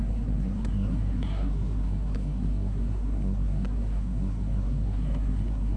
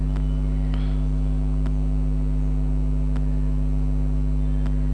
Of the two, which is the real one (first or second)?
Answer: second